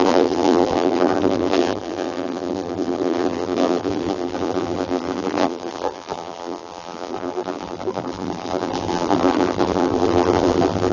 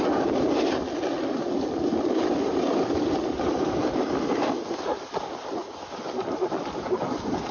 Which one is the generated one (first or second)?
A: first